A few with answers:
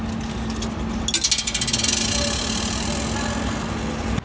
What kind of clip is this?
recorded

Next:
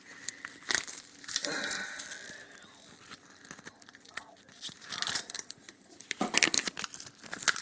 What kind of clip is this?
recorded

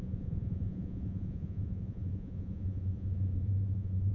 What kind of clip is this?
remade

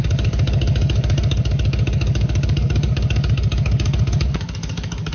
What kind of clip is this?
remade